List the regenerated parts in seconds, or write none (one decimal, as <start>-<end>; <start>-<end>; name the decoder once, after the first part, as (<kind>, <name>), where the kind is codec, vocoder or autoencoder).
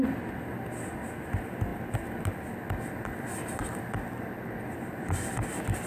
none